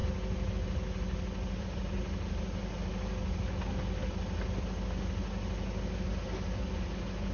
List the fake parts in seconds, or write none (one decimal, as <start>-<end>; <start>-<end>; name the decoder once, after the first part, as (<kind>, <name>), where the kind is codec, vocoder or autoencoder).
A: none